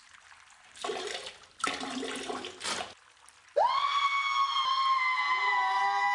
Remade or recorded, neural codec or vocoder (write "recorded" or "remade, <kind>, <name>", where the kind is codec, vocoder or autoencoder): recorded